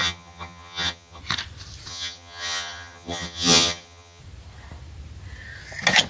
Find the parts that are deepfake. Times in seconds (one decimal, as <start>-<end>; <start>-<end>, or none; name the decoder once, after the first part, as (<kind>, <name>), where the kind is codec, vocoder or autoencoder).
0.0-1.2 (vocoder, HiFi-GAN); 1.9-4.2

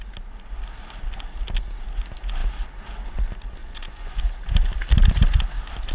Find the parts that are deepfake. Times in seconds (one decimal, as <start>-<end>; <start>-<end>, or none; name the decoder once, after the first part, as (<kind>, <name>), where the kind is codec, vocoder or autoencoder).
3.6-4.2 (vocoder, Vocos)

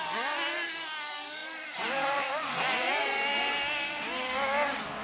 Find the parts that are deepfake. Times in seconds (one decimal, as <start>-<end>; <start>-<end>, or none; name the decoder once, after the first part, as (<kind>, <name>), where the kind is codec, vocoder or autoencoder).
1.4-3.5 (vocoder, BigVGAN v2)